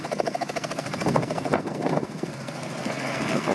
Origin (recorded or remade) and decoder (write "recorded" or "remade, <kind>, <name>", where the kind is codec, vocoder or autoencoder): remade, codec, SNAC